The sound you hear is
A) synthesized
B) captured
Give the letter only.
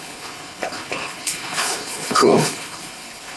A